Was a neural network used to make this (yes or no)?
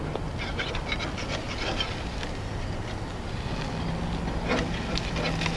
no